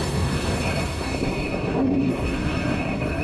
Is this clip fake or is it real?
fake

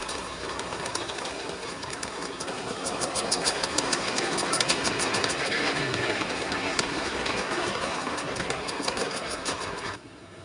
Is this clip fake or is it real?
fake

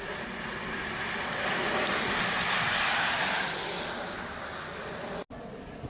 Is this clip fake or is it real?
real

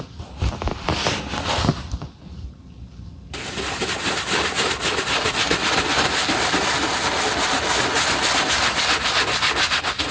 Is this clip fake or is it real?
real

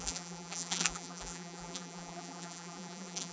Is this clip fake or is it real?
fake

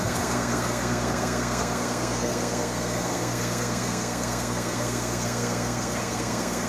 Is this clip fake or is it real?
fake